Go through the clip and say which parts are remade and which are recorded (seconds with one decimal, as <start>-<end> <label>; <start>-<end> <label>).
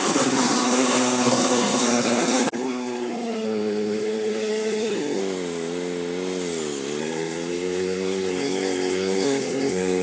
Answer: 0.0-5.2 remade; 5.2-7.0 recorded; 7.0-10.0 remade